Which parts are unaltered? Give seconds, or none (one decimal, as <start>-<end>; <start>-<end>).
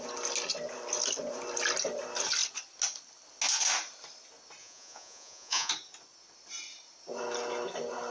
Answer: 0.0-4.6; 5.7-8.1